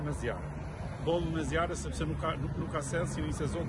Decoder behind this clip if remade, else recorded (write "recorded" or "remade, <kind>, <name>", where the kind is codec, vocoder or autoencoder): recorded